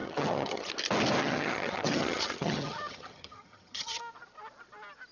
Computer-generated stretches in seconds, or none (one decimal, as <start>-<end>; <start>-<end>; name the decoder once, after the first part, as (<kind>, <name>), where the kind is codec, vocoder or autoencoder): 0.0-0.7 (vocoder, HiFi-GAN); 1.2-4.0